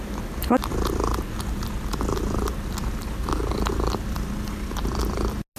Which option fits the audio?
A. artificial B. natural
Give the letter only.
B